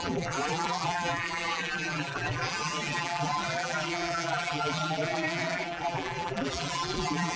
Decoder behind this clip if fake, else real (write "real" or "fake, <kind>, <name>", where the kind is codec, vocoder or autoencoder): fake, vocoder, BigVGAN v2